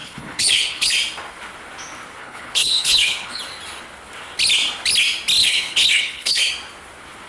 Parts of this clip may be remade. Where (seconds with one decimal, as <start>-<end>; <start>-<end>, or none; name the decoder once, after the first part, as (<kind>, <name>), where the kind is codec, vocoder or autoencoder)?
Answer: 0.0-0.9 (codec, HILCodec); 2.2-3.4; 5.4-6.5